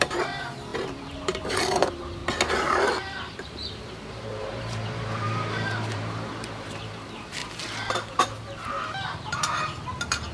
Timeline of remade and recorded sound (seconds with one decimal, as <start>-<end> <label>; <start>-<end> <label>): 0.0-2.2 remade; 2.2-3.4 recorded; 3.4-7.4 remade; 7.4-8.9 recorded; 8.9-10.3 remade